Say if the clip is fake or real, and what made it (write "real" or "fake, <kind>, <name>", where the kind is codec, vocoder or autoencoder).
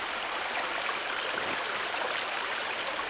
real